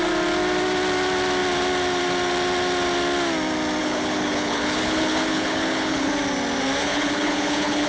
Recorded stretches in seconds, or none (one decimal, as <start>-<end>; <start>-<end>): 0.0-3.8; 6.1-6.8